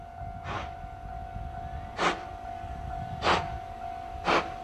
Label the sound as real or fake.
real